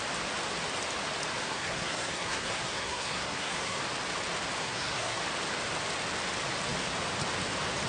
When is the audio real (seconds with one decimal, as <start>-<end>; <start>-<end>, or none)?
0.0-1.4; 3.8-4.6; 5.2-7.9